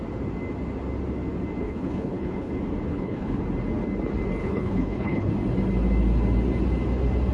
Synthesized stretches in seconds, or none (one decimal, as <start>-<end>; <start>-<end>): 1.6-2.5; 2.9-3.4; 4.4-5.3